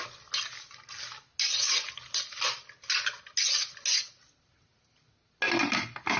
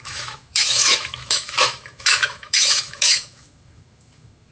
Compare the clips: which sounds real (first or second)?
first